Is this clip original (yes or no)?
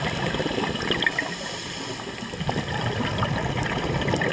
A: no